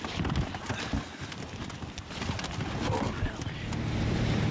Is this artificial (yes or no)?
no